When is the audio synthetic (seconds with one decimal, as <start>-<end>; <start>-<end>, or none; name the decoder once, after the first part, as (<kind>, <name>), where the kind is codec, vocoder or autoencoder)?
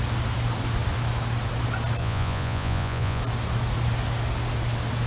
2.0-3.2 (vocoder, Vocos)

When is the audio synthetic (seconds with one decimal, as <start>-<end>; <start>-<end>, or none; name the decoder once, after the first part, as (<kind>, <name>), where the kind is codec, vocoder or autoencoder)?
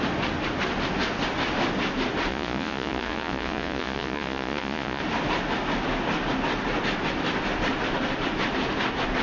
2.3-5.0 (vocoder, Vocos)